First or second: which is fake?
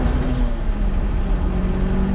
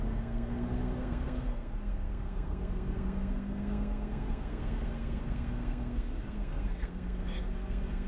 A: second